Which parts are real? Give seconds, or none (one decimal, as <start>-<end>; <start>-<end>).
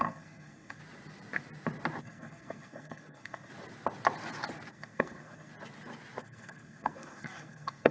0.8-2.0; 3.5-4.7; 5.5-6.2